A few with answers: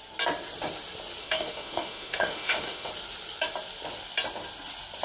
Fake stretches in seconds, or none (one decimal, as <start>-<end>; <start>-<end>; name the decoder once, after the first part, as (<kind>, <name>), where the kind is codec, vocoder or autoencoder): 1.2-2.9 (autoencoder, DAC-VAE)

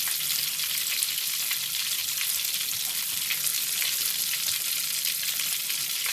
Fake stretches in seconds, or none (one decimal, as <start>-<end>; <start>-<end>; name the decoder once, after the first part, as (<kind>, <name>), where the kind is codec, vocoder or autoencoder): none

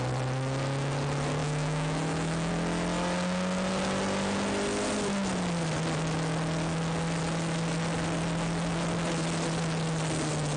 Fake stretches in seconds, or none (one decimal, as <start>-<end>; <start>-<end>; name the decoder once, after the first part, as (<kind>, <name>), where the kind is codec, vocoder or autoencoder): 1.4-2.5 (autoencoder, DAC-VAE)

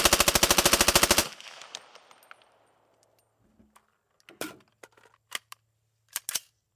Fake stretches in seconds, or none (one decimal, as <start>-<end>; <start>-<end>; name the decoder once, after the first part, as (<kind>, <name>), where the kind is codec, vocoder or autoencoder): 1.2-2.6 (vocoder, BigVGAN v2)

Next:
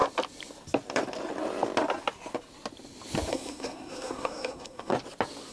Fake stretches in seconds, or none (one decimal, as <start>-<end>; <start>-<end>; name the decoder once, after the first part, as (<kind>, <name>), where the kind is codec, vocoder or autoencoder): 3.3-4.9 (codec, SNAC)

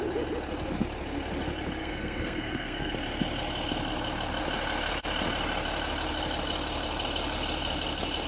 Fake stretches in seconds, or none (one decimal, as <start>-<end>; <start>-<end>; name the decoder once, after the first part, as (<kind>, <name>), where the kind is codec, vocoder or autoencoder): 1.8-2.9 (codec, SNAC)